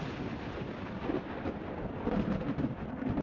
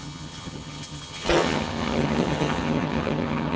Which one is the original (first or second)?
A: first